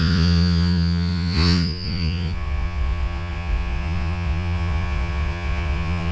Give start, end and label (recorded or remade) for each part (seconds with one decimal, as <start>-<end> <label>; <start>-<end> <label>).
0.0-6.1 remade